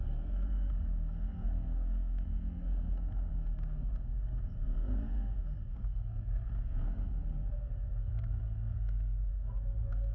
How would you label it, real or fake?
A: fake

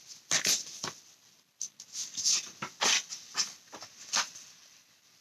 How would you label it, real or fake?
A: real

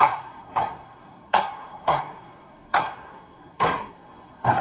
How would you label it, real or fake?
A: fake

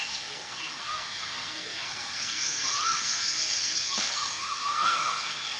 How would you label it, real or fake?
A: fake